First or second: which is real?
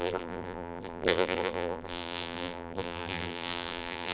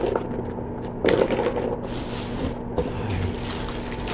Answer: second